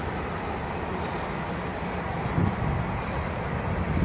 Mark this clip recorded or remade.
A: remade